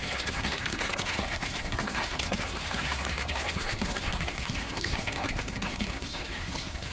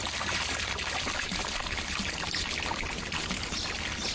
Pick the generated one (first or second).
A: first